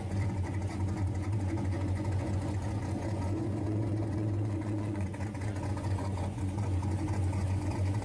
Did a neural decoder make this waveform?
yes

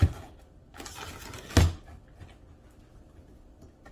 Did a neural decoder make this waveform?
no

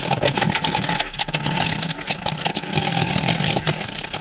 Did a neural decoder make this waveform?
yes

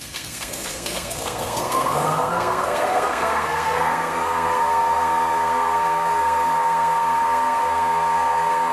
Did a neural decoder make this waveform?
yes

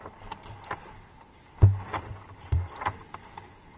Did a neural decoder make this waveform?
no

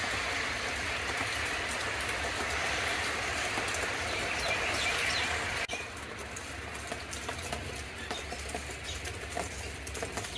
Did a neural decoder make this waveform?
no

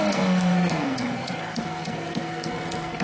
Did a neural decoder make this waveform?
yes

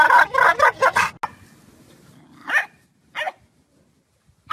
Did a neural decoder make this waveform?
no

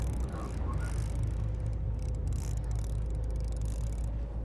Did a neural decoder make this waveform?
no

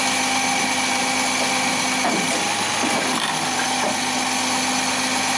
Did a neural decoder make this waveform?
no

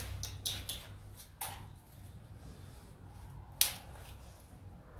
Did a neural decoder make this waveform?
no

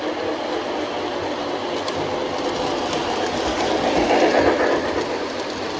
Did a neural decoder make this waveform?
no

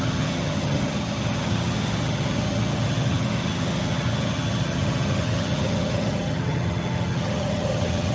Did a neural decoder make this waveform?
yes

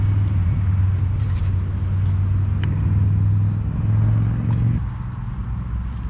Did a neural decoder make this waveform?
no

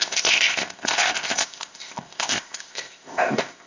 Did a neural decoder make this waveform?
yes